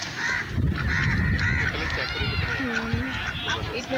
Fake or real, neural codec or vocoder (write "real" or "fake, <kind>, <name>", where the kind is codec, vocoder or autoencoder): real